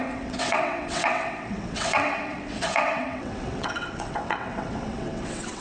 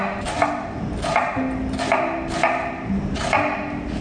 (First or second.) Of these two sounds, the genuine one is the second